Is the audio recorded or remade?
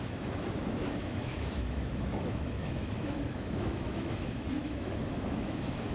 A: remade